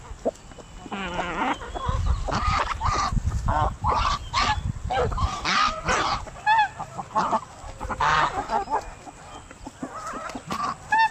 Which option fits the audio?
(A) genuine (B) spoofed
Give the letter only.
A